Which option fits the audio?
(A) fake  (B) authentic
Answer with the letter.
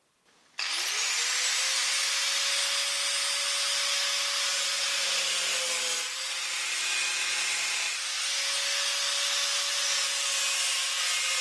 B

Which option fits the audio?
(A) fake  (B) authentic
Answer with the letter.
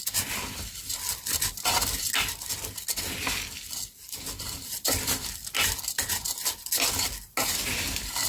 B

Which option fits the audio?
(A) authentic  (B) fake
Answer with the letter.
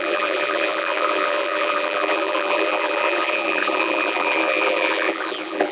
B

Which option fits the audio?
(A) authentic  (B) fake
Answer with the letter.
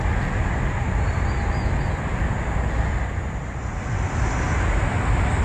A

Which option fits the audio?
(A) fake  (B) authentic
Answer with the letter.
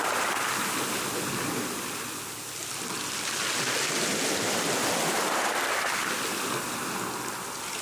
B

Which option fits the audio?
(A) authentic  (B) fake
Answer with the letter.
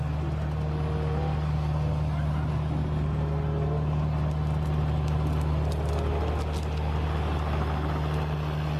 A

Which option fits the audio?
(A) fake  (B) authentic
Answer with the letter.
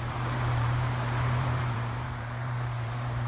A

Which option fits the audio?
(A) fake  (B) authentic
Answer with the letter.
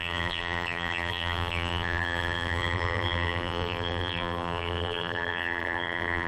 A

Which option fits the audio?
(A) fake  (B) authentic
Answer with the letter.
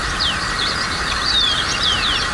A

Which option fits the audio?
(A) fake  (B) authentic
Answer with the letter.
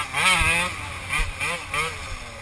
B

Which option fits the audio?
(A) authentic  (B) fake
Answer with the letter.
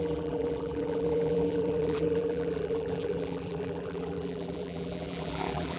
B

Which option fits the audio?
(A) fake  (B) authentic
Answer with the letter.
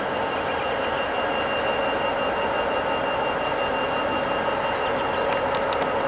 B